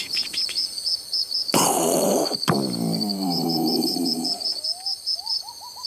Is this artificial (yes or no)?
yes